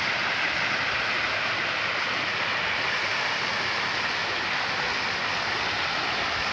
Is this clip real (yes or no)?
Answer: yes